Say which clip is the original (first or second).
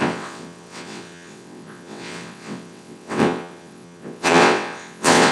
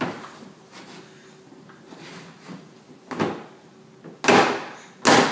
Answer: second